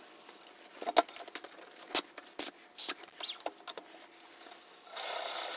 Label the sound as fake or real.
real